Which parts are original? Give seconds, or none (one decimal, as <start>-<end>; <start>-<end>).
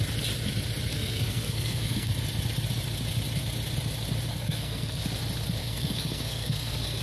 0.0-0.9; 2.1-4.3; 5.0-5.6